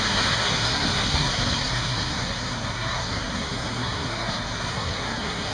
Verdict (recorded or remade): remade